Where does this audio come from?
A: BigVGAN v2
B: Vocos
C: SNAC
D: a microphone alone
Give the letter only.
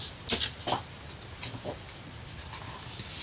D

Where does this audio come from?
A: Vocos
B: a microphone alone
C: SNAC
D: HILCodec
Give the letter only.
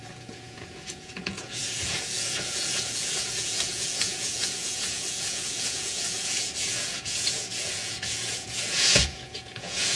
A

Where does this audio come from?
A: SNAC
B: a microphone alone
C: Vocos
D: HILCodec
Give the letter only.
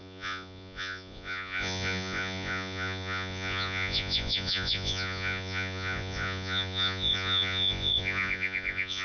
C